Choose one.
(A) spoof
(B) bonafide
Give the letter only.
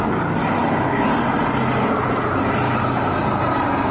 B